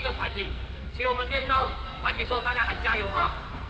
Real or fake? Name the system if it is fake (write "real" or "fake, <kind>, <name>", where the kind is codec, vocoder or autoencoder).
fake, codec, SNAC